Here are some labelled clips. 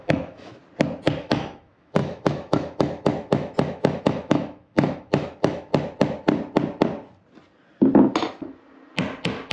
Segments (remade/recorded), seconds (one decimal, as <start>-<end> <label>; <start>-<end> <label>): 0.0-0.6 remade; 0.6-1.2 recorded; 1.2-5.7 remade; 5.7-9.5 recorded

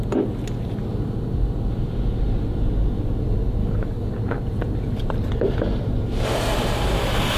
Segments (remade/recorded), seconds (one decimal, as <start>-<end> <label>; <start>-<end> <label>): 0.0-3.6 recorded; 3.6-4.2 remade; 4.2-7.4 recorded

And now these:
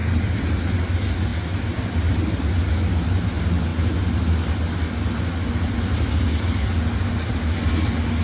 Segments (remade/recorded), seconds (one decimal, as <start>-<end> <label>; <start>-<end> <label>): 0.0-0.9 remade; 0.9-8.2 recorded